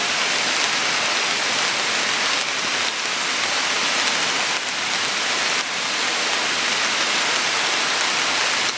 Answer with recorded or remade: recorded